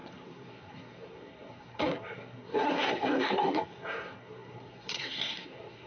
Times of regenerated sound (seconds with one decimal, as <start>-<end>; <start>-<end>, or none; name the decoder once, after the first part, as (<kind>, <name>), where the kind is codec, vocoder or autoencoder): 0.0-5.9 (codec, SNAC)